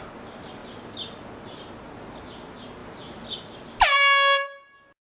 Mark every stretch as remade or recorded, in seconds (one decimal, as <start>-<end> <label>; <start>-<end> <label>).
0.0-5.2 recorded